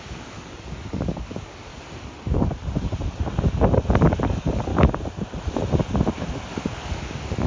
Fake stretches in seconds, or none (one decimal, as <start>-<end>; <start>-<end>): 0.0-1.7; 4.2-4.7; 6.5-7.5